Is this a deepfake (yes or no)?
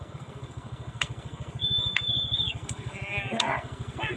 yes